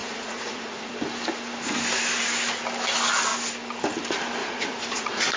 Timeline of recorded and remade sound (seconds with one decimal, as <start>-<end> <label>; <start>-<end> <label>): 0.0-0.9 remade; 0.9-4.4 recorded; 4.4-5.4 remade